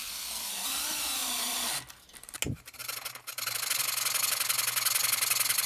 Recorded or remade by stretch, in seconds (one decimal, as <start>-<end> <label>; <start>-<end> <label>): 0.0-0.5 remade; 0.5-5.7 recorded